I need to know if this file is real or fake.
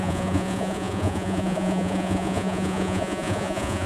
fake